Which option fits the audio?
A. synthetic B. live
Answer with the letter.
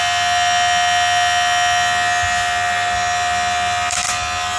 B